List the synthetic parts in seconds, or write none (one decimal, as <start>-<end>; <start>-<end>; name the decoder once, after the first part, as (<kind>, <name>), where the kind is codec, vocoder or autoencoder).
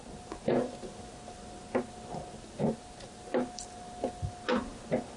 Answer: none